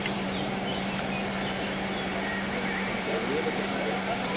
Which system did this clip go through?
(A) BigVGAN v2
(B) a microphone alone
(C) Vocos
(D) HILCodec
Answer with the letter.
A